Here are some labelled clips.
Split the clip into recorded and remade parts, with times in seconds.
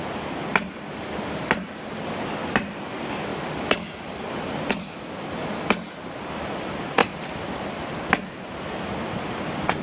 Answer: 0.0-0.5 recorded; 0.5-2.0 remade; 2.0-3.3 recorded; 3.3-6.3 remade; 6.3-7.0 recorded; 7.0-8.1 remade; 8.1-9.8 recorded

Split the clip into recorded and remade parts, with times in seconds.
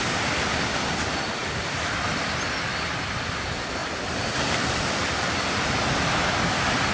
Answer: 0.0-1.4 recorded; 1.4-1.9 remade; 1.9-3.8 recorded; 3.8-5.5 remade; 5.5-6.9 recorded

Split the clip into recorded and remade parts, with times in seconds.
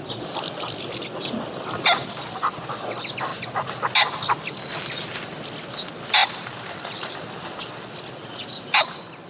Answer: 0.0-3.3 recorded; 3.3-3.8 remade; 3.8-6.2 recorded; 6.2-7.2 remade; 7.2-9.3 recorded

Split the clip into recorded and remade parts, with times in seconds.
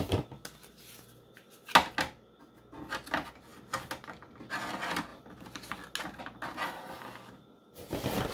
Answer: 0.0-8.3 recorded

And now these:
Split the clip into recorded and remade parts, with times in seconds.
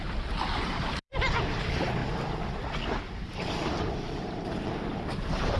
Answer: 0.0-2.0 remade; 2.0-3.0 recorded; 3.0-5.6 remade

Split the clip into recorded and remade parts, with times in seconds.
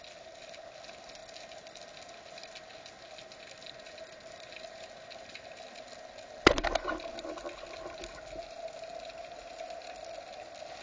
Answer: 0.0-10.8 recorded